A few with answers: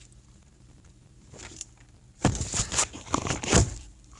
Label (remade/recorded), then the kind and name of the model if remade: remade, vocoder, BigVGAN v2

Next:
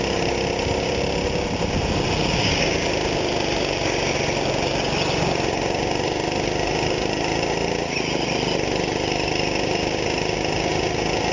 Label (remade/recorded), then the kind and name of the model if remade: recorded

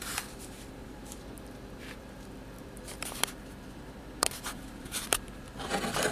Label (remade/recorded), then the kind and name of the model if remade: remade, vocoder, BigVGAN v2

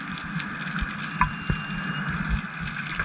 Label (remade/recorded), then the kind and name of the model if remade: recorded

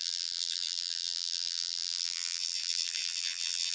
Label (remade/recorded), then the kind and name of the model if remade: remade, vocoder, BigVGAN v2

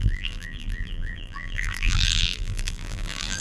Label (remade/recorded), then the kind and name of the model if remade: remade, vocoder, BigVGAN v2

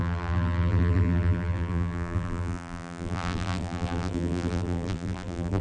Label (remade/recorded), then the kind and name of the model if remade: remade, vocoder, BigVGAN v2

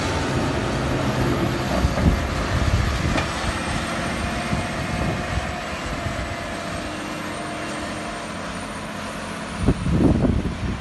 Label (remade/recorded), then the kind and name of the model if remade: recorded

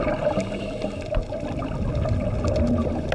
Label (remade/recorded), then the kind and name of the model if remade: recorded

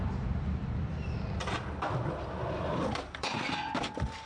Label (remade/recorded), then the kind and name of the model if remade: remade, vocoder, BigVGAN v2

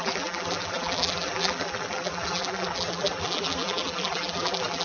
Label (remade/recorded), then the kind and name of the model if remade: remade, vocoder, BigVGAN v2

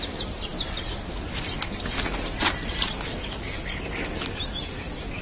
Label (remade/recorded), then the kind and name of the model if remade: remade, vocoder, BigVGAN v2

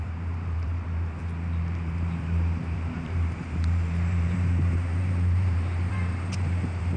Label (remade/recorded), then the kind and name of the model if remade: remade, vocoder, BigVGAN v2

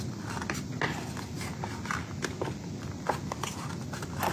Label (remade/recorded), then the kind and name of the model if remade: recorded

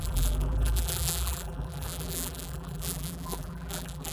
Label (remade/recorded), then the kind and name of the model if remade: remade, vocoder, BigVGAN v2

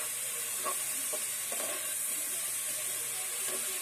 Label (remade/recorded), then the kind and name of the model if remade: recorded